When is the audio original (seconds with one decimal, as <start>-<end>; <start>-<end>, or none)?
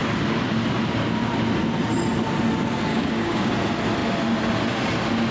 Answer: 0.0-2.9; 3.5-5.3